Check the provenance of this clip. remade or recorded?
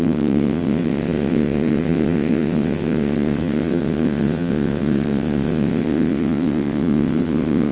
remade